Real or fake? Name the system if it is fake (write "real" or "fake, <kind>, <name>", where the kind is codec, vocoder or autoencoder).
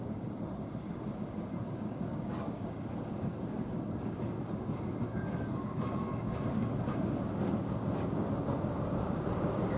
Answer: fake, codec, DAC